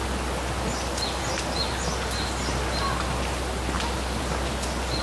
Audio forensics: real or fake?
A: real